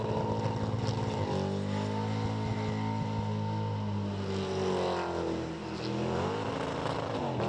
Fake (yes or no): no